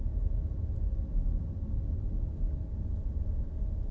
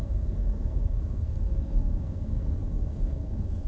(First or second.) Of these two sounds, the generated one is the second